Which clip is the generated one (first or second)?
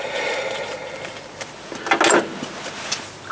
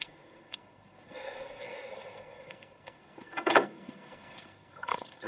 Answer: second